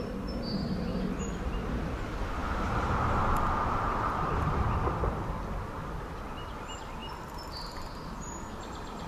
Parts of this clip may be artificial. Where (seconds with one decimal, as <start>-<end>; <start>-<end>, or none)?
none